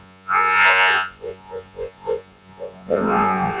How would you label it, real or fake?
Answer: fake